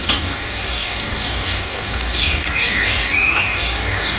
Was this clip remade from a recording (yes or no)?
yes